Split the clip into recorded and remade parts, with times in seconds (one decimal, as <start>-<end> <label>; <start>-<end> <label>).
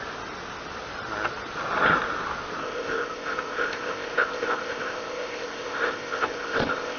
0.0-2.6 recorded; 2.6-7.0 remade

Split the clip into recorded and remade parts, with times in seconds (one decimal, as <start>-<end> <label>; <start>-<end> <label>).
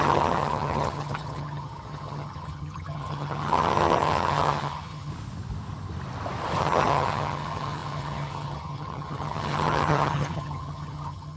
0.0-5.1 remade; 5.1-6.6 recorded; 6.6-11.4 remade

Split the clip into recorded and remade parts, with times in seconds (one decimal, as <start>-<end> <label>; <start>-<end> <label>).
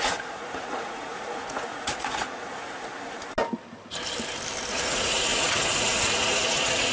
0.0-2.9 remade; 2.9-4.7 recorded; 4.7-6.9 remade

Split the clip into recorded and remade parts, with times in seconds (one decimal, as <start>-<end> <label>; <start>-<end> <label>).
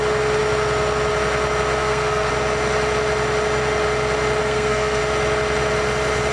0.0-1.8 recorded; 1.8-2.3 remade; 2.3-4.4 recorded; 4.4-5.0 remade; 5.0-6.3 recorded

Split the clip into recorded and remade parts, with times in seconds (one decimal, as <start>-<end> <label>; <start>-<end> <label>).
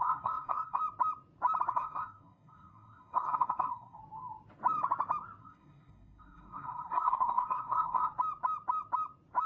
0.0-0.8 remade; 0.8-1.7 recorded; 1.7-4.0 remade; 4.0-5.4 recorded; 5.4-8.1 remade; 8.1-9.5 recorded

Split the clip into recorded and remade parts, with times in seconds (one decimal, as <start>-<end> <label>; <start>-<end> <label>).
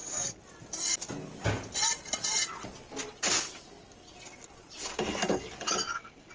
0.0-6.3 recorded